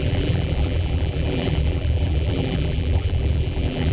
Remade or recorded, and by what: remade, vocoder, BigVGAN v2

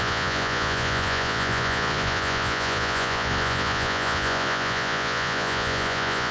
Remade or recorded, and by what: remade, vocoder, Vocos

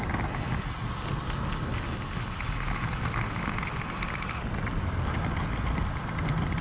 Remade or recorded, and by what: recorded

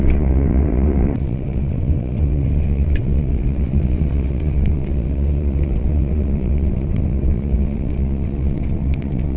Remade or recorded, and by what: remade, vocoder, WaveNeXt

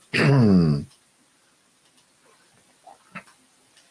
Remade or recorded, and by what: recorded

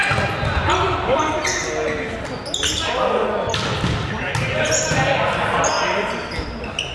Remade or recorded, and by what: recorded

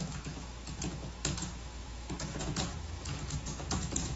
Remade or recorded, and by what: remade, autoencoder, DAC-VAE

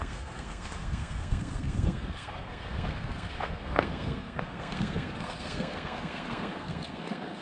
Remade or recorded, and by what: remade, codec, SNAC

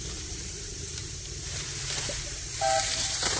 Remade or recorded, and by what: remade, vocoder, BigVGAN v2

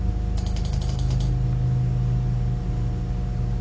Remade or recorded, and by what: recorded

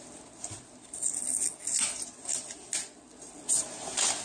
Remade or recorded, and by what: recorded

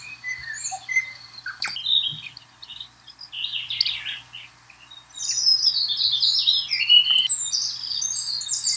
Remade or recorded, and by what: recorded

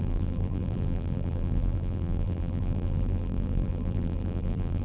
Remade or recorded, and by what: remade, vocoder, BigVGAN v2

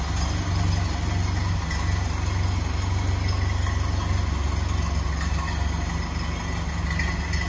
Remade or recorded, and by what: recorded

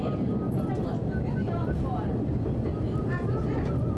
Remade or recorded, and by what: recorded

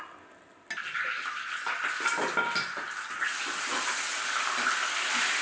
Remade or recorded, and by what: recorded